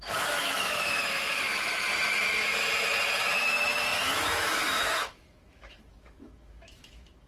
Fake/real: fake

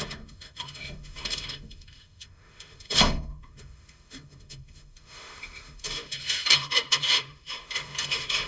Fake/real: fake